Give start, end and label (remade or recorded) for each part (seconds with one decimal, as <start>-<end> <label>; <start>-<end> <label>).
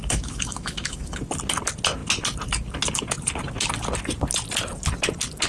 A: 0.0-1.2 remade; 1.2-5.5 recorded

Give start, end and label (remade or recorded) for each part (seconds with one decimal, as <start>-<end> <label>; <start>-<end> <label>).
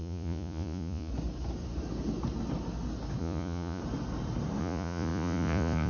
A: 0.0-1.1 remade; 1.1-3.2 recorded; 3.2-3.8 remade; 3.8-4.6 recorded; 4.6-5.9 remade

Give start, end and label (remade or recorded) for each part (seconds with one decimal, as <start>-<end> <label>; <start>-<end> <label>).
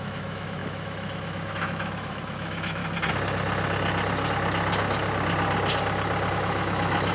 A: 0.0-2.8 remade; 2.8-6.3 recorded; 6.3-7.1 remade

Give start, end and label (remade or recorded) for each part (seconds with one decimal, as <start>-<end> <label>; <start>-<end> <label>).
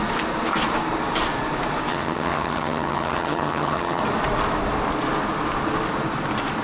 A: 0.0-1.9 recorded; 1.9-4.0 remade; 4.0-6.6 recorded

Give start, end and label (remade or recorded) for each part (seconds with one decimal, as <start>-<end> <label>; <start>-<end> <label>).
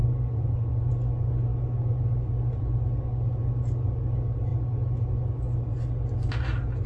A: 0.0-0.9 remade; 0.9-6.9 recorded